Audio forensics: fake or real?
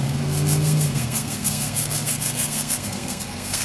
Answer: fake